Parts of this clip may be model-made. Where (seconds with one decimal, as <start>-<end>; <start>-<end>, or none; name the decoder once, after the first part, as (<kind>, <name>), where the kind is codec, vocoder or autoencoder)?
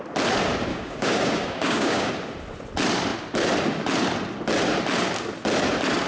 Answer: 0.7-2.1 (codec, DAC)